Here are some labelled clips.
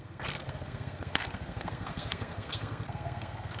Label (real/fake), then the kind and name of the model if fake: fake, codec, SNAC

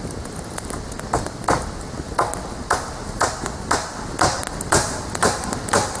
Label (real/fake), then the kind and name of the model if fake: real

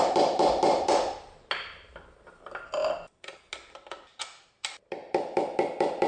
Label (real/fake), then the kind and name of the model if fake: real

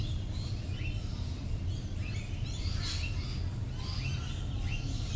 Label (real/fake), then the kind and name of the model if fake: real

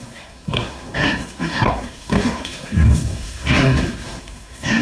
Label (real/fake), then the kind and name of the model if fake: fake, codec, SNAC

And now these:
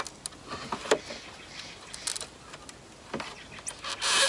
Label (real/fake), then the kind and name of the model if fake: real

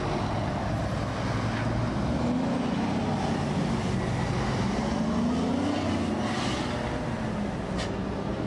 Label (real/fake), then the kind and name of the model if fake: real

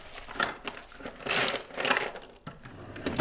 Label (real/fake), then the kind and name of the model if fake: real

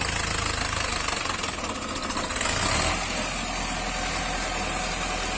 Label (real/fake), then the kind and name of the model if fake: real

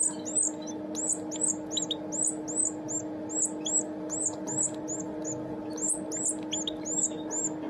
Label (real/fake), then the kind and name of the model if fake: real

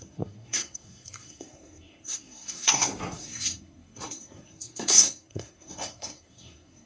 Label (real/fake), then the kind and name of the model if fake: fake, codec, SNAC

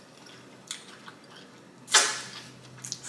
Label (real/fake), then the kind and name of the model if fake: real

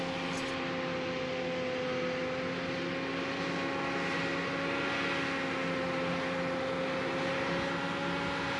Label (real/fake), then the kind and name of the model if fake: real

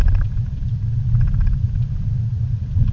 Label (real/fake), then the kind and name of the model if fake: real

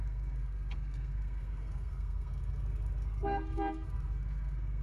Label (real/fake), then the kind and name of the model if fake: fake, codec, SNAC